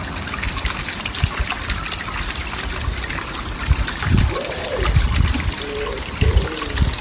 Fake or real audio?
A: real